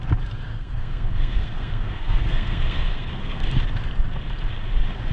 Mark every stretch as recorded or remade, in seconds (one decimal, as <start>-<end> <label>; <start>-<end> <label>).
0.0-0.5 recorded; 0.5-3.6 remade; 3.6-5.1 recorded